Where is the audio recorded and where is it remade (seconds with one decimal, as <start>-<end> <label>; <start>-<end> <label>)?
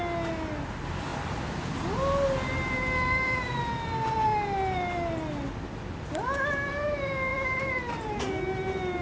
0.0-7.3 recorded; 7.3-8.4 remade; 8.4-9.0 recorded